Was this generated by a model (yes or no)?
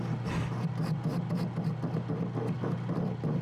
no